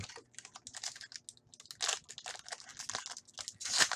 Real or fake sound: real